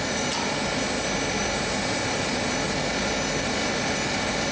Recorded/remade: recorded